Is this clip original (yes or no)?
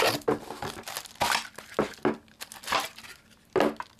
yes